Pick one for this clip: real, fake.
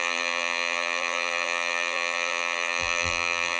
fake